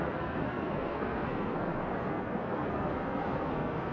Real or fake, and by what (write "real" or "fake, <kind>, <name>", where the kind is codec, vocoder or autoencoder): fake, codec, SNAC